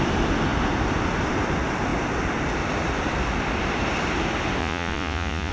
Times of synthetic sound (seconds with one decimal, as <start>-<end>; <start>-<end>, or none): 4.6-5.5